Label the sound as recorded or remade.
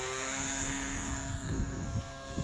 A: remade